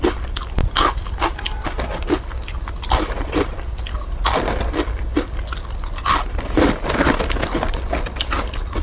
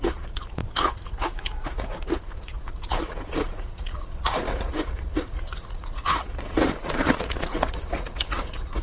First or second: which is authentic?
first